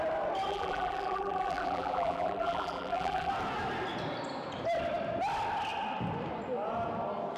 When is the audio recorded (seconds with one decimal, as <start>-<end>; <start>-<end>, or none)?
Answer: 0.0-0.5; 3.3-7.4